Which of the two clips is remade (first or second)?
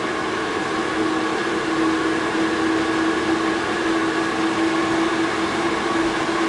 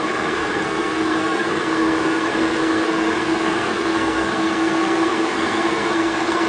second